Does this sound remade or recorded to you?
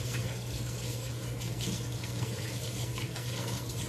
remade